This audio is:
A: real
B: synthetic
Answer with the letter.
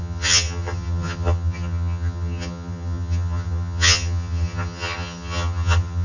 B